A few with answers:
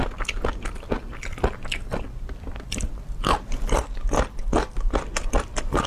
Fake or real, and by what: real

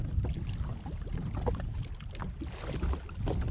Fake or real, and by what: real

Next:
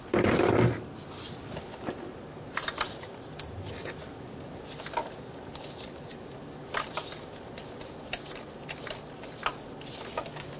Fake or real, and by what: real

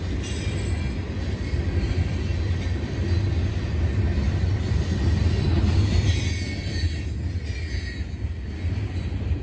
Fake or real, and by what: real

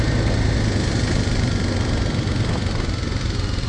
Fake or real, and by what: real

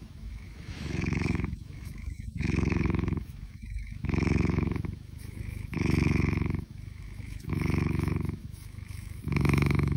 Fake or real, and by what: fake, autoencoder, DAC-VAE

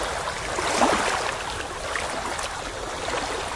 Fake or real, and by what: real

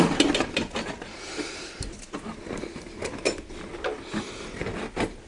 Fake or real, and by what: real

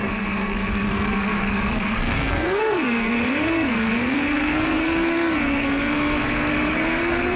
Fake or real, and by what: fake, codec, SNAC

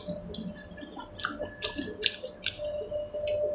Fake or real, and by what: real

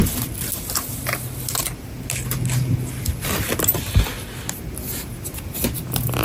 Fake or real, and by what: real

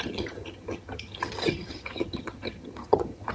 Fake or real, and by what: fake, vocoder, HiFi-GAN